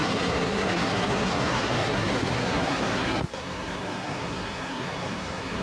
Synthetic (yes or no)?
yes